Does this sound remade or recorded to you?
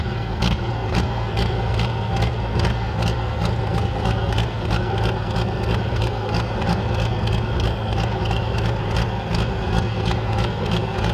remade